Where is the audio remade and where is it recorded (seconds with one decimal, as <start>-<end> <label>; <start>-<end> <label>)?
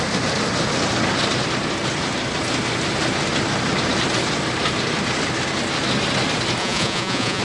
0.0-6.6 recorded; 6.6-7.4 remade